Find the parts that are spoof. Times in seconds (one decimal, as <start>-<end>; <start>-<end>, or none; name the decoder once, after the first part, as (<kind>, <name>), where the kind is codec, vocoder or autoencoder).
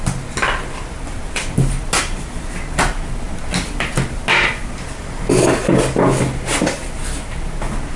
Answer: none